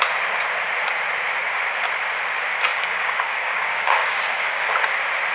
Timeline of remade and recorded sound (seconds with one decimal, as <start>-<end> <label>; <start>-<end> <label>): 0.0-2.7 recorded; 2.7-4.7 remade; 4.7-5.3 recorded